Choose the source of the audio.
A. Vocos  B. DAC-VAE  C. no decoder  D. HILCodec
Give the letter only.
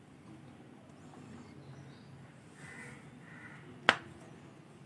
C